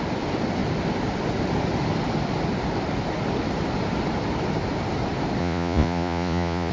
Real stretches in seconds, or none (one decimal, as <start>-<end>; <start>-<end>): 0.0-5.4